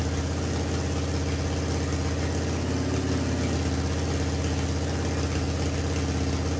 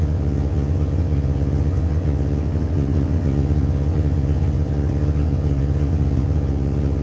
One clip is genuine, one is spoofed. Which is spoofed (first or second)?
second